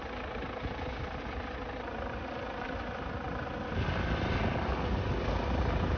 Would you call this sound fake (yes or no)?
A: no